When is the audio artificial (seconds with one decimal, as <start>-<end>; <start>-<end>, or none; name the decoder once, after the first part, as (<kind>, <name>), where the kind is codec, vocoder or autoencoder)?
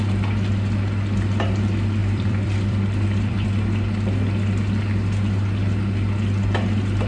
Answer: 2.0-3.5 (vocoder, BigVGAN v2)